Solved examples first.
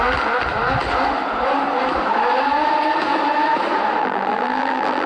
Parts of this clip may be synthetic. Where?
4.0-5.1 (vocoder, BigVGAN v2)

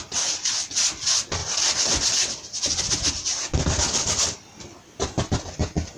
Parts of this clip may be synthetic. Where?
1.4-4.6 (vocoder, BigVGAN v2)

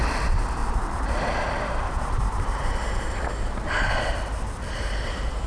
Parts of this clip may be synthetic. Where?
0.6-3.9 (vocoder, BigVGAN v2)

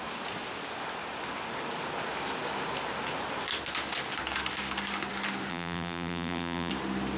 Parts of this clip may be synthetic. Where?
5.5-6.7 (vocoder, BigVGAN v2)